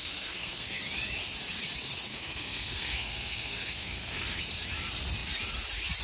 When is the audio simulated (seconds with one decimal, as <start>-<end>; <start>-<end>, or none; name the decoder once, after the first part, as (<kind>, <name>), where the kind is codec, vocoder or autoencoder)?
0.0-0.8 (codec, SNAC); 2.1-4.4